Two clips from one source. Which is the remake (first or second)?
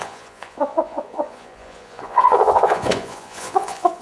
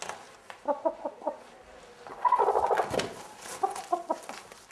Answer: first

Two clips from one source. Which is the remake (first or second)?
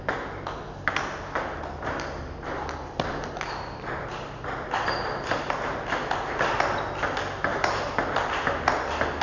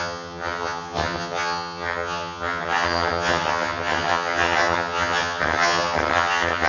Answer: second